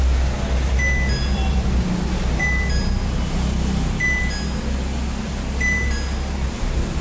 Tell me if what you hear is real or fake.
real